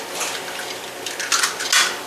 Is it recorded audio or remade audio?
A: recorded